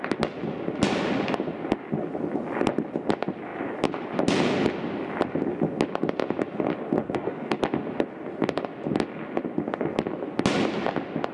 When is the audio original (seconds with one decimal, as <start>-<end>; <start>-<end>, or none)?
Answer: 0.0-7.0; 7.6-11.3